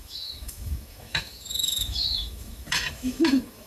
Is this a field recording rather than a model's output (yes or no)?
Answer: no